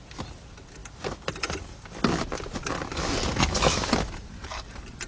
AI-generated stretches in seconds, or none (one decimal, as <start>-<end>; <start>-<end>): none